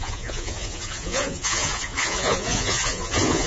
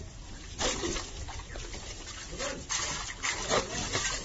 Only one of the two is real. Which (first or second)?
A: second